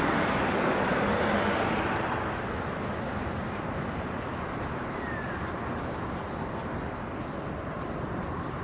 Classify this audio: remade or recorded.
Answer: recorded